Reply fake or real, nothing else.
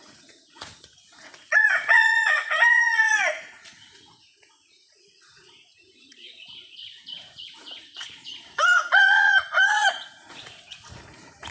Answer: fake